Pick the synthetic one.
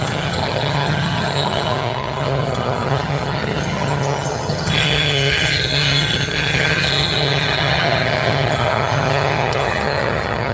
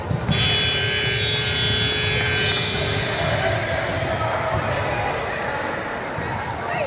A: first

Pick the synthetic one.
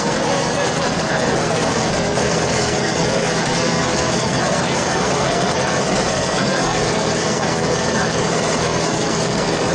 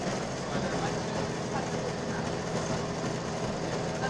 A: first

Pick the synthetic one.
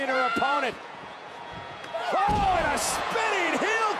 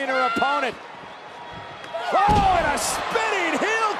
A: first